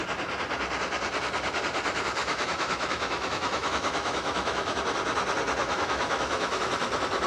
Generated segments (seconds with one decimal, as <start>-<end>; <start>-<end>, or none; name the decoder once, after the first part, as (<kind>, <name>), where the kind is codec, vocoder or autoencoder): 2.2-4.8 (autoencoder, DAC-VAE); 5.6-6.7